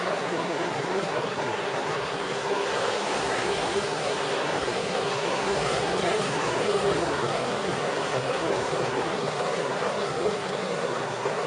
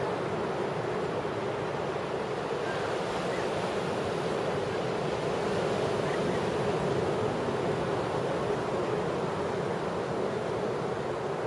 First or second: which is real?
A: second